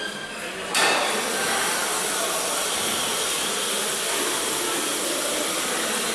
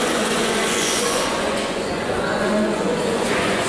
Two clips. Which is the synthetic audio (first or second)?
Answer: second